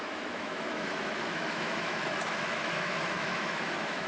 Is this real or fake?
fake